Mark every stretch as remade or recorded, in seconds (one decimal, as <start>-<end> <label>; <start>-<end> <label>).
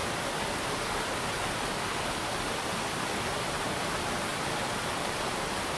0.0-3.5 recorded; 3.5-4.3 remade; 4.3-4.9 recorded; 4.9-5.8 remade